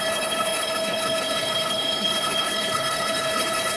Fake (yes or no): yes